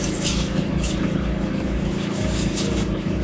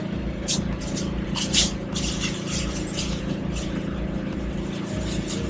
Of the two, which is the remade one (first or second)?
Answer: first